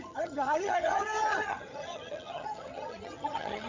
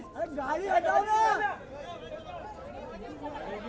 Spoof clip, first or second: first